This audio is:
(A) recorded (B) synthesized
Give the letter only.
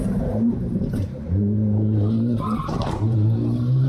B